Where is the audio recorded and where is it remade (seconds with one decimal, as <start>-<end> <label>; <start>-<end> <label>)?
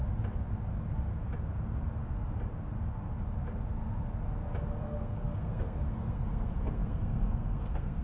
0.0-4.8 recorded; 4.8-8.0 remade